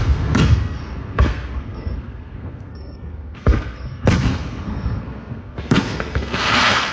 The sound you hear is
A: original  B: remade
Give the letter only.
B